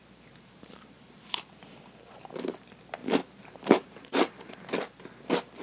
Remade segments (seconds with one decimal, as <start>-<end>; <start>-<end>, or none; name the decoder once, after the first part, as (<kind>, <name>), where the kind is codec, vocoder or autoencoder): 0.0-1.5 (vocoder, BigVGAN v2); 3.0-4.3

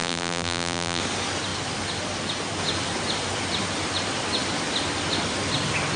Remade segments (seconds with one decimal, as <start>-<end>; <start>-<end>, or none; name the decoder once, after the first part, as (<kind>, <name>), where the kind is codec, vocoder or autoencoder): 0.0-1.0 (vocoder, BigVGAN v2)